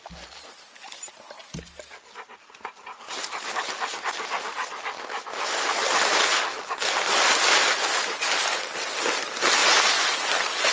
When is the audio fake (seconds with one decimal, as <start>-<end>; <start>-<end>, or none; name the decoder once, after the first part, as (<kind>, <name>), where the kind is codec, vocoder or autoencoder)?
none